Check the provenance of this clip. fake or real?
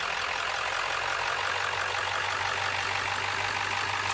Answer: real